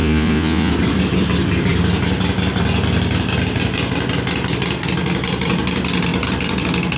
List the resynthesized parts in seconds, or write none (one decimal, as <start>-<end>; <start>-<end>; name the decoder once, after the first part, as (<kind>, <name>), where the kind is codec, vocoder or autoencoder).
0.0-0.7 (vocoder, Vocos)